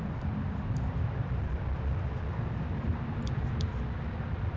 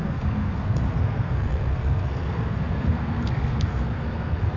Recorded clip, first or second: first